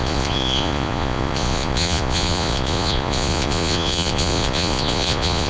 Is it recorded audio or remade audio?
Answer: remade